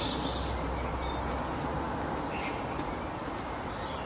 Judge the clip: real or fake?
real